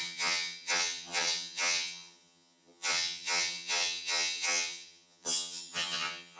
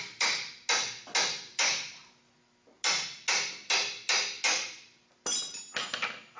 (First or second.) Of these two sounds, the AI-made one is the first